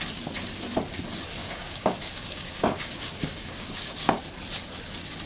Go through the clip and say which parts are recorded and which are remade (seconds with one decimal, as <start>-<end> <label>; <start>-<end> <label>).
0.0-1.4 recorded; 1.4-4.2 remade; 4.2-5.3 recorded